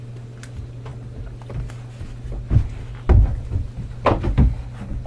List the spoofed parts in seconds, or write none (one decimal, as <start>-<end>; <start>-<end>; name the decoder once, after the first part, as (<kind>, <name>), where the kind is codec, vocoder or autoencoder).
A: none

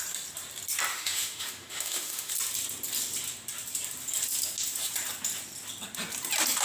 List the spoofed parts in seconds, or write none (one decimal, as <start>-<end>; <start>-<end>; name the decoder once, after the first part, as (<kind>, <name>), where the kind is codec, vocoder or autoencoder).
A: 0.9-2.3 (autoencoder, DAC-VAE)

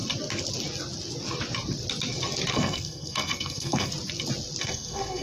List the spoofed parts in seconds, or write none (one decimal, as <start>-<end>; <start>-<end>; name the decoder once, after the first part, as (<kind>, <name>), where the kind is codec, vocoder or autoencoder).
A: 2.5-3.9 (codec, SNAC); 4.6-5.2

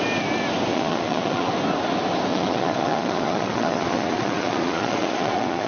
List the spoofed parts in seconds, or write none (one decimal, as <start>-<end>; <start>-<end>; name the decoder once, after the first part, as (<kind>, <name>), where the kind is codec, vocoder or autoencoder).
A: 0.7-1.5 (vocoder, Vocos); 2.3-5.7

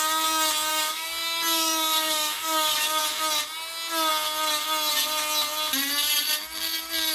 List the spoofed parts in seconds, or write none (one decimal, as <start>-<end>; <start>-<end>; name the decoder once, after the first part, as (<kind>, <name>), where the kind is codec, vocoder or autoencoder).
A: 0.7-3.0 (codec, DAC)

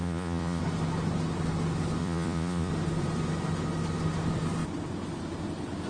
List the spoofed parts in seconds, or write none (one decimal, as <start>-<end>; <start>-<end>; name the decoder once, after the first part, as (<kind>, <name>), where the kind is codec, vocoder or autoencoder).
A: 0.0-0.6 (vocoder, Vocos); 2.0-2.7